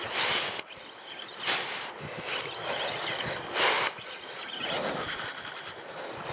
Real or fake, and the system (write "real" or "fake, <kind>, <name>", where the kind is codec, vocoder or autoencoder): real